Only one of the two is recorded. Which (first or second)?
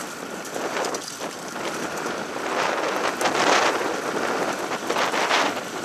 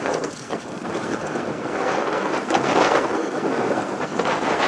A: first